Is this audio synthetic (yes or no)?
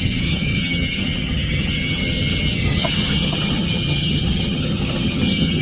yes